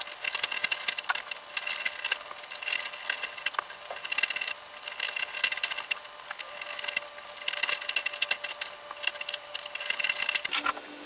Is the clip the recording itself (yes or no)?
yes